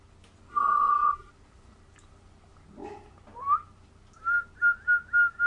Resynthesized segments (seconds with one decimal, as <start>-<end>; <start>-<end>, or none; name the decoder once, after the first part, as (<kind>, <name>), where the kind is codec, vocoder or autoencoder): 0.5-1.3 (codec, SNAC)